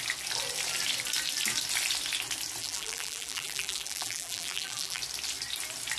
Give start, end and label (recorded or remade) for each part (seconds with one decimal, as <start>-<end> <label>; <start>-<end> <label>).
0.0-2.6 recorded; 2.6-5.0 remade; 5.0-6.0 recorded